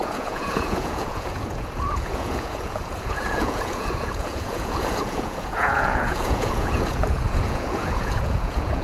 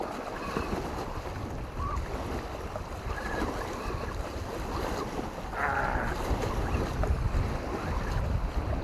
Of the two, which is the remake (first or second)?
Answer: first